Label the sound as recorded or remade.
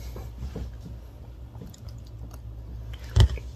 recorded